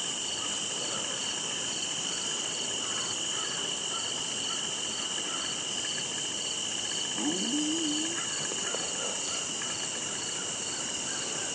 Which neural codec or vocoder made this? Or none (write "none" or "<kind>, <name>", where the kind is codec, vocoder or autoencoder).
none